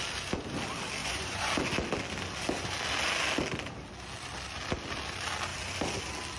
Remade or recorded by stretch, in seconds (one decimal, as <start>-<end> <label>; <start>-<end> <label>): 0.0-1.0 recorded; 1.0-1.5 remade; 1.5-6.4 recorded